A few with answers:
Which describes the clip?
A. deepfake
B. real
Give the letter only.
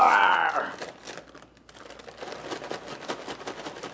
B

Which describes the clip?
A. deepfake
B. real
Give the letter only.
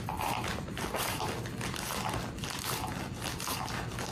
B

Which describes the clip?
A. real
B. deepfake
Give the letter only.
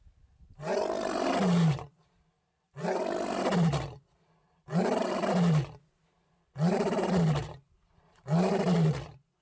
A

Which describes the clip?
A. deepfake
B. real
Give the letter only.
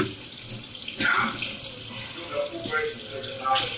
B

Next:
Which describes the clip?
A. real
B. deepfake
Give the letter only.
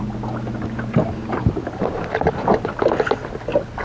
A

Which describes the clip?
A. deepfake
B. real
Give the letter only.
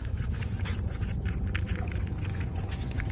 A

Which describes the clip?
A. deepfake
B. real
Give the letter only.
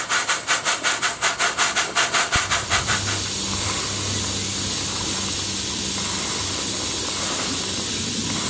B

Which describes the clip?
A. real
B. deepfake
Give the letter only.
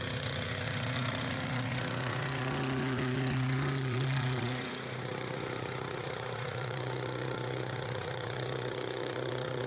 B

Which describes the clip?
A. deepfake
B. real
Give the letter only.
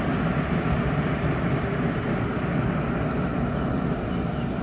B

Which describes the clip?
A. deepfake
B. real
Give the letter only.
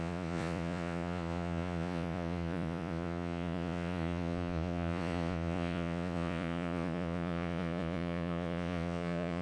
A